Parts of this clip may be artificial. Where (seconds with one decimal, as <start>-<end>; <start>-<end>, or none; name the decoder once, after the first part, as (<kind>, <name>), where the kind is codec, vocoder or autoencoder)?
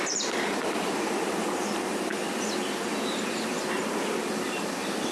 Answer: none